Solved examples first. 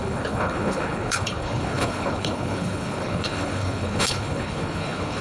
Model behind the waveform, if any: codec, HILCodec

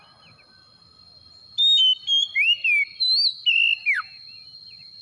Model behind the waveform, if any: none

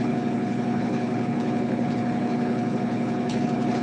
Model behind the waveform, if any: codec, HILCodec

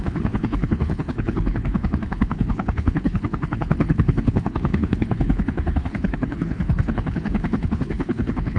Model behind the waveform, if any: codec, HILCodec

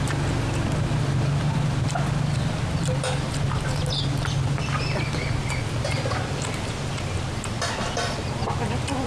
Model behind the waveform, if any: none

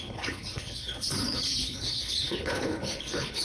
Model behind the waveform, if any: codec, HILCodec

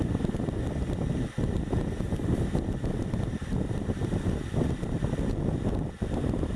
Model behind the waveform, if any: none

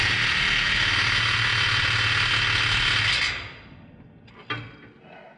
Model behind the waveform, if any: none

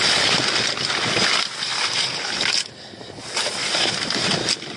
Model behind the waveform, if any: none